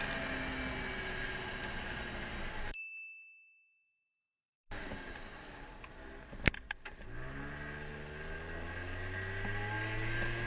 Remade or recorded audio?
recorded